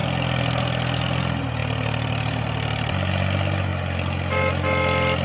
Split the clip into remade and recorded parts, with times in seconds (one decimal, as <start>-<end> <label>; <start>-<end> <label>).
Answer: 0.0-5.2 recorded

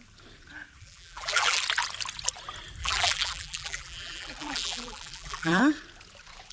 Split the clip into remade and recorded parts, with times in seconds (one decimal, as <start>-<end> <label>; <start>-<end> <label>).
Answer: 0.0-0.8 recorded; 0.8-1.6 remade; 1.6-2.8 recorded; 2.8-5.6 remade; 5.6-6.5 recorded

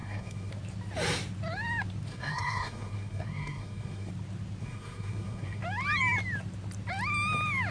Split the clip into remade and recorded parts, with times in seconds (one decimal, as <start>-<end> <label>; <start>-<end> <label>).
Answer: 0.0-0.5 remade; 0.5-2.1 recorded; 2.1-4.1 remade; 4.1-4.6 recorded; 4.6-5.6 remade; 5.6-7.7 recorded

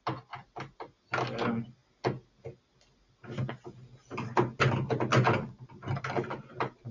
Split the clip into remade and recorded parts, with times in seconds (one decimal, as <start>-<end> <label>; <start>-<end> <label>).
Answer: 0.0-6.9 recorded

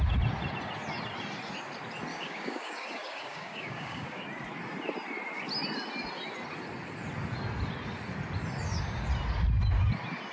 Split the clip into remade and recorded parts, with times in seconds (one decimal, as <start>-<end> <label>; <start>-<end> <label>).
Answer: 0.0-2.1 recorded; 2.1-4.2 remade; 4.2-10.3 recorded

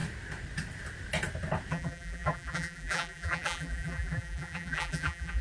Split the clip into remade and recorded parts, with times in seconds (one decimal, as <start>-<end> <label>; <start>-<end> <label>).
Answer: 0.0-1.7 recorded; 1.7-5.4 remade